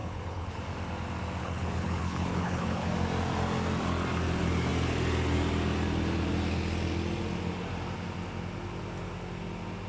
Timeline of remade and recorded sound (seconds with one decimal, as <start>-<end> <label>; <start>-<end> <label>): 0.0-0.6 remade; 0.6-1.4 recorded; 1.4-2.9 remade; 2.9-9.9 recorded

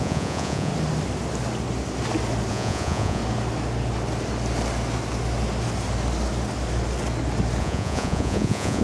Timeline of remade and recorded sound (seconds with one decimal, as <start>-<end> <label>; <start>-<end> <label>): 0.0-0.7 remade; 0.7-2.5 recorded; 2.5-3.2 remade; 3.2-7.6 recorded; 7.6-8.8 remade